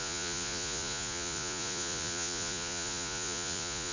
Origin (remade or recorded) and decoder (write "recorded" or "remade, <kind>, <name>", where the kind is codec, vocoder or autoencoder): remade, vocoder, Vocos